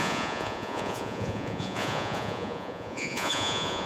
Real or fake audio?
fake